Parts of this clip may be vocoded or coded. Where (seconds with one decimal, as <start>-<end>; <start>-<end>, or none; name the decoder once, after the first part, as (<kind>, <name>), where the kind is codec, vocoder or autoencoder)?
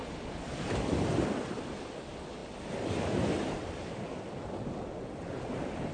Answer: none